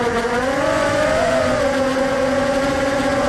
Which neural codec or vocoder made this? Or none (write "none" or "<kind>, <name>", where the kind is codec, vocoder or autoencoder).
vocoder, Vocos